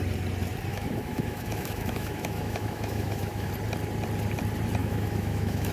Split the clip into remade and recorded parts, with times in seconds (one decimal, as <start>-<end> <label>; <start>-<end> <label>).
0.0-0.7 recorded; 0.7-3.5 remade; 3.5-4.8 recorded; 4.8-5.7 remade